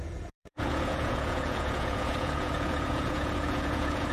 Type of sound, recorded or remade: remade